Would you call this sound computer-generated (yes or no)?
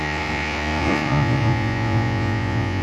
yes